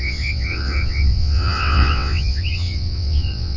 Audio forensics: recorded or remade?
remade